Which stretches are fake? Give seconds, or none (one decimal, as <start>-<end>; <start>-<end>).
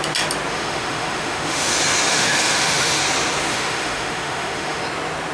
0.5-1.7; 2.1-3.0; 3.5-4.8